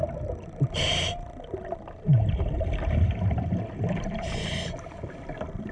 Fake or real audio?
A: real